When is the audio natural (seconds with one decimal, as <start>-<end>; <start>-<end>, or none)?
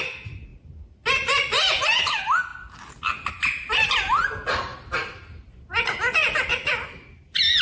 0.0-7.6